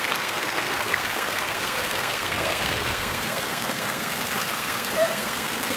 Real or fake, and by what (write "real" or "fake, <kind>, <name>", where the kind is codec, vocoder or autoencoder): fake, codec, SNAC